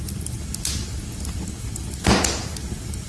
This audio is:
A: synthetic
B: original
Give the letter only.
B